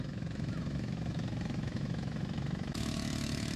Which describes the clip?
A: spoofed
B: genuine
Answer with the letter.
A